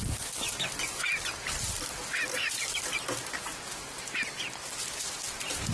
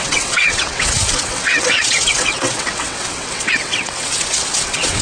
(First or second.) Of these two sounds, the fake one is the second